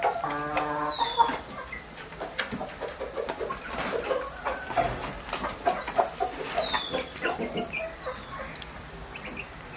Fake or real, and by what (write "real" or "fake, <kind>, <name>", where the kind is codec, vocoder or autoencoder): real